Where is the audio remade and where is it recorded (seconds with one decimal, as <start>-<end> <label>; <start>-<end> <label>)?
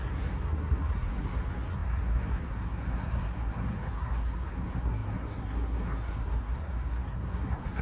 0.0-7.8 remade